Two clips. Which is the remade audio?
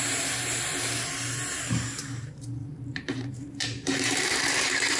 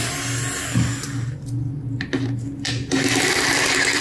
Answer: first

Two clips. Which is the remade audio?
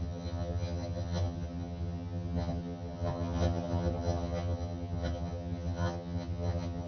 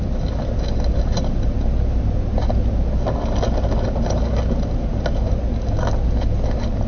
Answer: first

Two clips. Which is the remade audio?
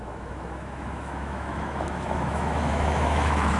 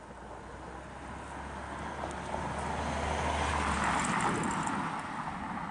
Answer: first